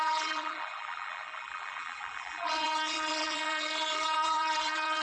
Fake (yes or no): yes